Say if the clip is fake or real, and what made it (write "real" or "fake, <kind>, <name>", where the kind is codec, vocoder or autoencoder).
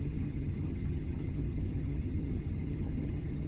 fake, vocoder, HiFi-GAN